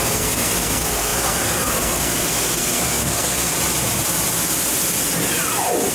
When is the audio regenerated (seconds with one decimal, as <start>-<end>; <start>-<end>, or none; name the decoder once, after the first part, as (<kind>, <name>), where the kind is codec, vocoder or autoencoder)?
0.0-3.5 (codec, SNAC)